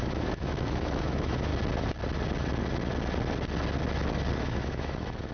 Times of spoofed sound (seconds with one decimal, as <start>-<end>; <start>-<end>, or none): 0.0-1.5; 4.4-5.3